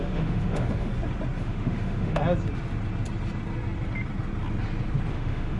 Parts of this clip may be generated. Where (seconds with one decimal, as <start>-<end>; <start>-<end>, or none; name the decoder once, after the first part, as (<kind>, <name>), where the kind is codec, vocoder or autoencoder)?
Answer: 0.0-0.9 (autoencoder, DAC-VAE); 1.4-2.2; 5.1-5.6